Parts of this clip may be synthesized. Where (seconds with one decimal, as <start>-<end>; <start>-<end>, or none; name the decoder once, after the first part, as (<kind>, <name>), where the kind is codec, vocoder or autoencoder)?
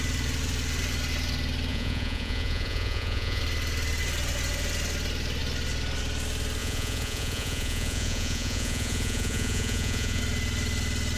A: 1.7-3.4 (vocoder, Vocos); 6.6-10.2